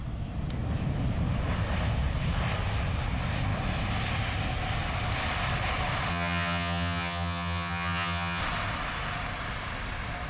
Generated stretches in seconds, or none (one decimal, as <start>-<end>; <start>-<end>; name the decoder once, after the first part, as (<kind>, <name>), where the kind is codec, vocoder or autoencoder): 6.1-8.4 (vocoder, HiFi-GAN)